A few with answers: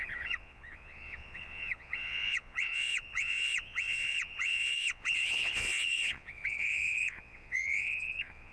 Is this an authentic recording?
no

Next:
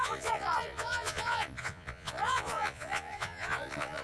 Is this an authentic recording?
no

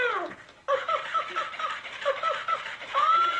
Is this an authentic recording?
yes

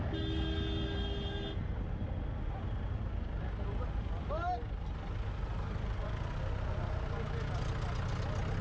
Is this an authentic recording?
yes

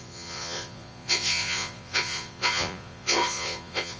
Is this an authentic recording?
no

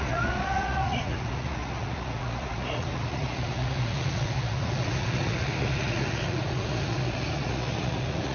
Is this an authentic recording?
no